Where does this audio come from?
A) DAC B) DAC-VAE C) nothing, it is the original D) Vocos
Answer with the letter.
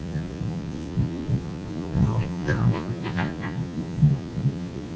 D